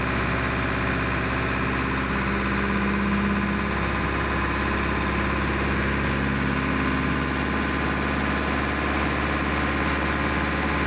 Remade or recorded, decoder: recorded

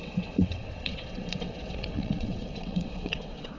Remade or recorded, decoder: remade, vocoder, WaveNeXt